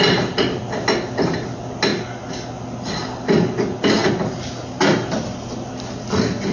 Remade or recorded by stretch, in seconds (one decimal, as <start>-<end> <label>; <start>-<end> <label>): 0.0-6.5 recorded